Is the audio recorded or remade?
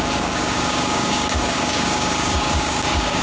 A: remade